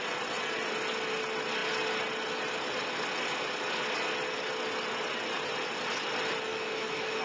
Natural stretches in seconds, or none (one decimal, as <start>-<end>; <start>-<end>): 0.0-6.5